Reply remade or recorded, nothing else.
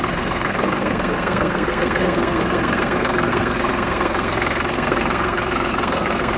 remade